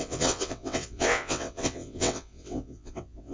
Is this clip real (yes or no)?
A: no